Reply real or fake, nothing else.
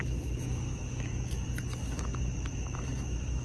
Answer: fake